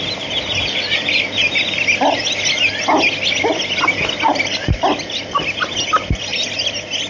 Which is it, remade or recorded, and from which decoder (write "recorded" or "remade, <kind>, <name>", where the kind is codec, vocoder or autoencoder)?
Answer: recorded